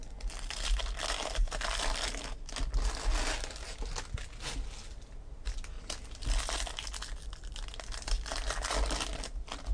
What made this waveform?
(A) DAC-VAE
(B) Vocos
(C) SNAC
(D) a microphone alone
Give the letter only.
D